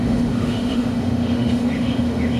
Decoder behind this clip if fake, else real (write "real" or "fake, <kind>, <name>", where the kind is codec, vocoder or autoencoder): fake, autoencoder, DAC-VAE